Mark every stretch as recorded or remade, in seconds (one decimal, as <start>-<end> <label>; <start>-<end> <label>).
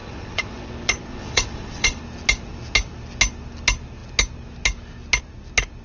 0.0-0.7 remade; 0.7-1.1 recorded; 1.1-2.0 remade; 2.0-5.8 recorded